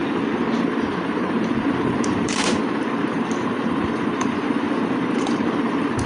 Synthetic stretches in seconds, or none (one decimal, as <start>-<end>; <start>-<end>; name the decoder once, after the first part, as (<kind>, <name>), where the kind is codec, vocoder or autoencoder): 0.9-6.1 (vocoder, BigVGAN v2)